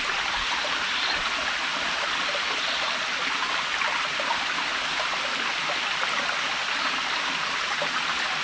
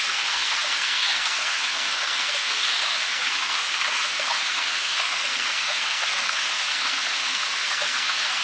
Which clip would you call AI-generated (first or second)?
second